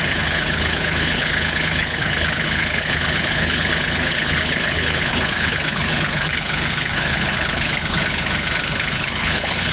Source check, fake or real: fake